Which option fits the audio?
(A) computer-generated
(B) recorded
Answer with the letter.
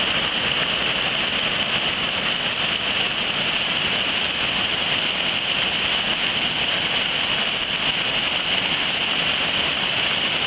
B